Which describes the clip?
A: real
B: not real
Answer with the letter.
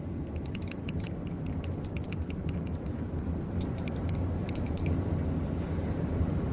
B